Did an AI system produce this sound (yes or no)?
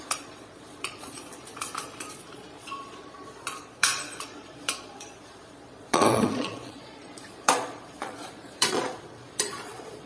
yes